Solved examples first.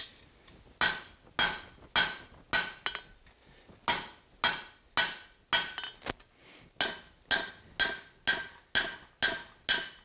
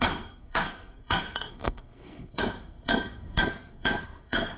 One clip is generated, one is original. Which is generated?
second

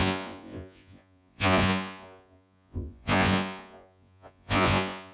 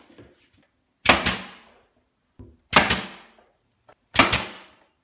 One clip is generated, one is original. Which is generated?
first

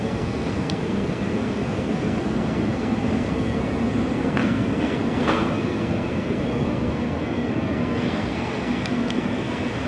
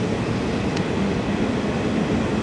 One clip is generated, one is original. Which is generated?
first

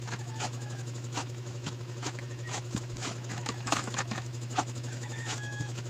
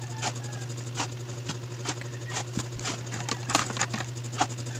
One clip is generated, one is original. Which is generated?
first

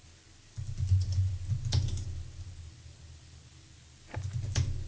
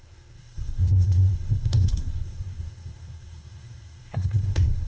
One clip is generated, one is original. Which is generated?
second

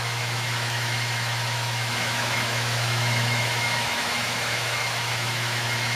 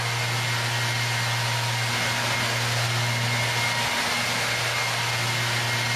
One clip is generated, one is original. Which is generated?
first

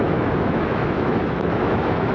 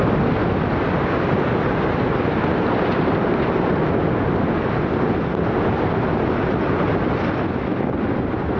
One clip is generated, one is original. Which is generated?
first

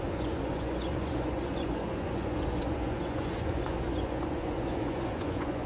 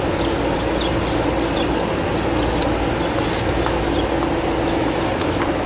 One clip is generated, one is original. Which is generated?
first